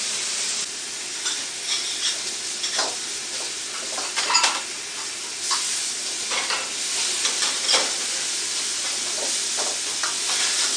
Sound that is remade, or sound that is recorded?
recorded